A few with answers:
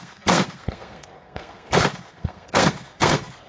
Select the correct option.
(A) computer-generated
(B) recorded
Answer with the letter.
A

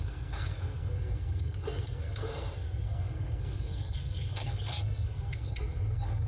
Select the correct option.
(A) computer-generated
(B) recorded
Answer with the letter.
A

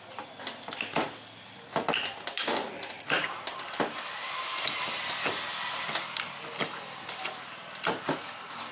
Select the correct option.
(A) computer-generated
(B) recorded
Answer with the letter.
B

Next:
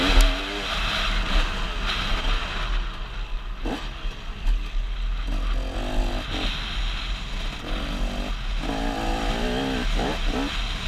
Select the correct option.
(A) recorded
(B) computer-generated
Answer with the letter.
A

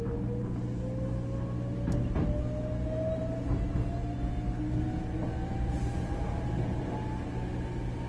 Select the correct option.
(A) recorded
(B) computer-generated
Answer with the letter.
A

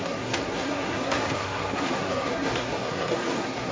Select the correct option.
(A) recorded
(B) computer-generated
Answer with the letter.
B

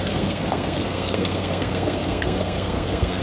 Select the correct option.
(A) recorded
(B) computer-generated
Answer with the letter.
B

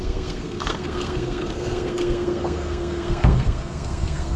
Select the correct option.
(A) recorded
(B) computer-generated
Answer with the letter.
B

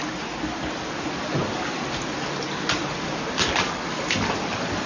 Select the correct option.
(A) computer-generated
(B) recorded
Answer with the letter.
B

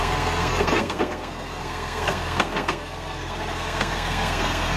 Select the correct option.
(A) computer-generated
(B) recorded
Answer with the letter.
A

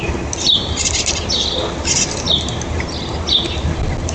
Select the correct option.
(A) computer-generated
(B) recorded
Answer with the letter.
B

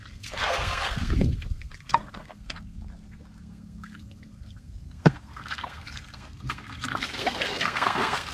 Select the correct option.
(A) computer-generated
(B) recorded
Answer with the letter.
A